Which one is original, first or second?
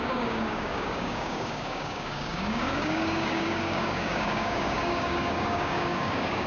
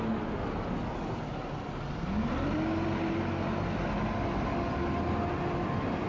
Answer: second